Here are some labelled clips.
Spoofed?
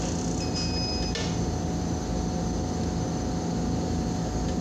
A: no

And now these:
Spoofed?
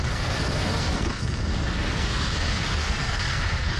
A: yes